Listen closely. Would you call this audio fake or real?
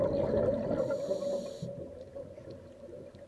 real